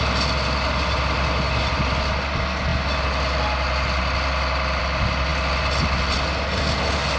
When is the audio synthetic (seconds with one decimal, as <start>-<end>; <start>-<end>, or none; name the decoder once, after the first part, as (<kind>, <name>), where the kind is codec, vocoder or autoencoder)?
none